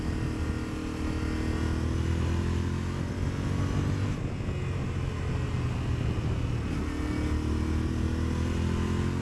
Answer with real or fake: real